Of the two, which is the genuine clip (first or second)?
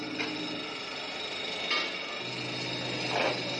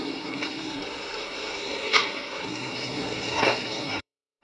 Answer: first